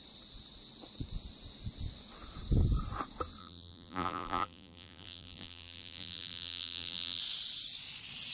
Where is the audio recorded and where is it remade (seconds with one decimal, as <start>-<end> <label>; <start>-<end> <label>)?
0.0-3.4 recorded; 3.4-7.2 remade; 7.2-8.3 recorded